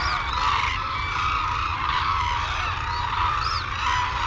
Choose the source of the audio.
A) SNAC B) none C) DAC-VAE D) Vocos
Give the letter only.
B